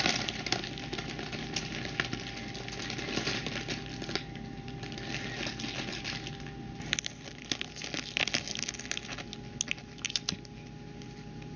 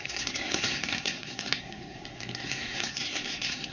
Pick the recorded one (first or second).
first